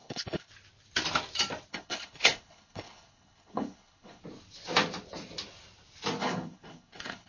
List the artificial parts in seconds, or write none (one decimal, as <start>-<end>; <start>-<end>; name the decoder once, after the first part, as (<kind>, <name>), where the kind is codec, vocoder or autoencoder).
0.0-0.5 (codec, HILCodec); 1.7-4.2; 6.2-7.3

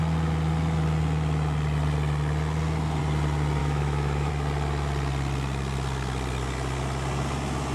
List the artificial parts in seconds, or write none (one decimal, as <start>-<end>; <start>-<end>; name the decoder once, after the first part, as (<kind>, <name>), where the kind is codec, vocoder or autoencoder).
3.6-4.3 (autoencoder, DAC-VAE)

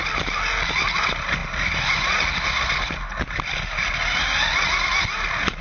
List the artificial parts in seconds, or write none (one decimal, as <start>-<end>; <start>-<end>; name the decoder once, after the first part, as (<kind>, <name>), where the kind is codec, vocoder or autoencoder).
none

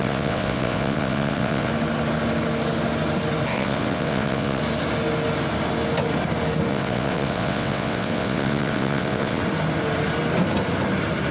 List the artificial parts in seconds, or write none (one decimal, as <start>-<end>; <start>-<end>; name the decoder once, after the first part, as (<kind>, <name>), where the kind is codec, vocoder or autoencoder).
0.0-1.7 (vocoder, WaveNeXt); 3.5-4.6; 6.7-9.4